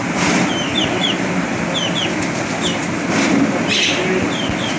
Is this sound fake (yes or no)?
no